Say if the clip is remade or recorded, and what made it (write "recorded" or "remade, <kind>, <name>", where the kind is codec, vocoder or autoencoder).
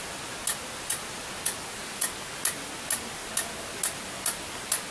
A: recorded